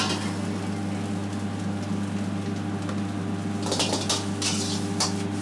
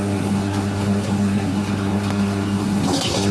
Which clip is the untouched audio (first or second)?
first